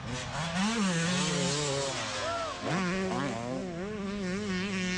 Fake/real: real